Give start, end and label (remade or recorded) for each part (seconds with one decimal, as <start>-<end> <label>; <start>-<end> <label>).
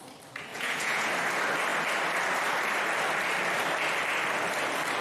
0.0-0.5 recorded; 0.5-1.1 remade; 1.1-5.0 recorded